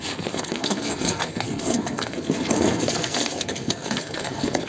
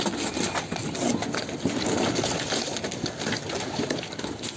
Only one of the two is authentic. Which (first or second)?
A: second